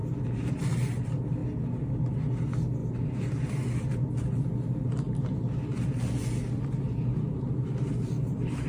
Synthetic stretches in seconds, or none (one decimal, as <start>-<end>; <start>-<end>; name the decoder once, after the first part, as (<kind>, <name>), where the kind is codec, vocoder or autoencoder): none

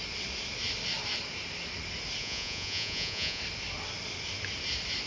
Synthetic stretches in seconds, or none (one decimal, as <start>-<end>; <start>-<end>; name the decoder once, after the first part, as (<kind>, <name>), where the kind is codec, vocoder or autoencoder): 2.2-3.4 (vocoder, Vocos)

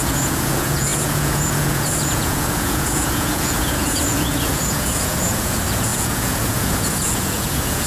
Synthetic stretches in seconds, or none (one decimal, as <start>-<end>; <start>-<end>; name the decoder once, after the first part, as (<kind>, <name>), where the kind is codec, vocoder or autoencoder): 0.0-7.9 (vocoder, Vocos)

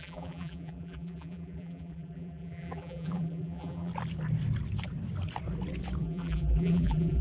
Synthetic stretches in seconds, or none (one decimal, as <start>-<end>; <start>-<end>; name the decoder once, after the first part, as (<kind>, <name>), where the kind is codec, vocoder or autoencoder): 0.0-3.9 (vocoder, BigVGAN v2); 6.0-7.2

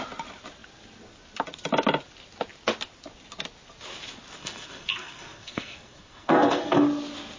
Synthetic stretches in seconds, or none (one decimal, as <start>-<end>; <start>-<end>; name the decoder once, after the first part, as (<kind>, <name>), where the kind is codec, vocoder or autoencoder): 4.4-6.8 (codec, SNAC)